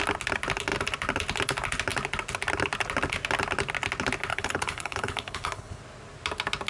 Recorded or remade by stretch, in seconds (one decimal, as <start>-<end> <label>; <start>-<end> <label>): 0.0-4.3 recorded; 4.3-5.8 remade; 5.8-6.7 recorded